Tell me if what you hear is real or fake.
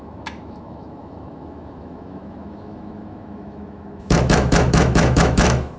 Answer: fake